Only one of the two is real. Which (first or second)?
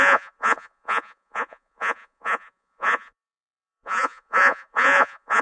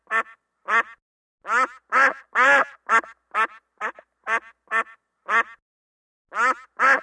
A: second